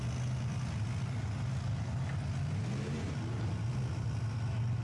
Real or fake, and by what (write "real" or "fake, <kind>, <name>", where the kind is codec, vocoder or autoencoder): real